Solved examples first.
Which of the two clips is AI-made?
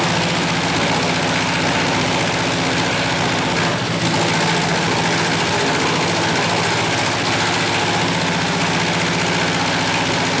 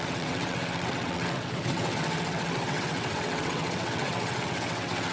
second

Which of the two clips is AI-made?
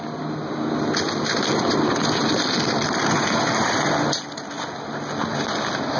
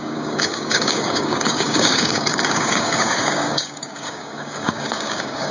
second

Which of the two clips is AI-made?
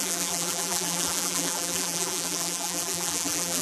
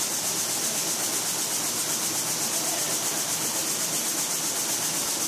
first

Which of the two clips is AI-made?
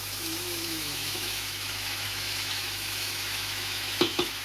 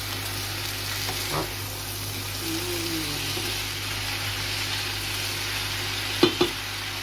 first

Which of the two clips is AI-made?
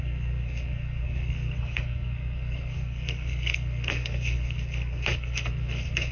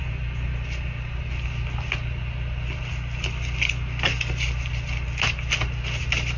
first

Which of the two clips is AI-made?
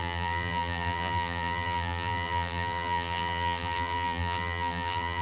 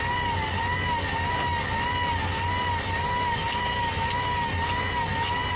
first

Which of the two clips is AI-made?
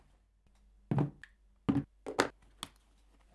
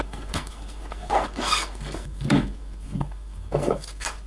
second